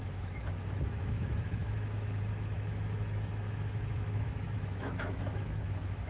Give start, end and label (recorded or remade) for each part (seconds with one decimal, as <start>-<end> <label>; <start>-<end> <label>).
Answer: 0.0-6.1 remade